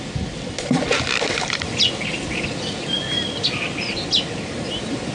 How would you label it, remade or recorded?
recorded